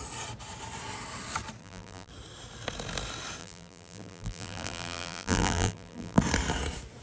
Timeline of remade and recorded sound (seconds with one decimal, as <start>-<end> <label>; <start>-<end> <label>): 0.0-1.6 recorded; 1.6-2.1 remade; 2.1-3.4 recorded; 3.4-6.2 remade; 6.2-7.0 recorded